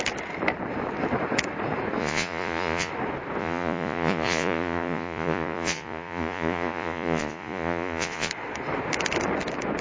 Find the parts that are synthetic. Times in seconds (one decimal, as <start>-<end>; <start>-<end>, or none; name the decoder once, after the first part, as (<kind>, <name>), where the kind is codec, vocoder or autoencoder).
2.0-2.9 (vocoder, Vocos); 3.4-8.3